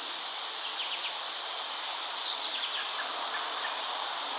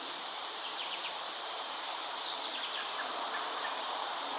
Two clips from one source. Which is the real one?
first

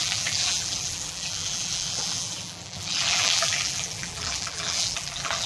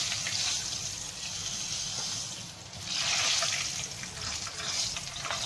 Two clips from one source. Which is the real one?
second